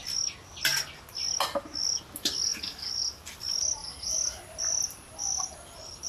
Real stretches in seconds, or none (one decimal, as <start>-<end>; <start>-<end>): 0.0-3.8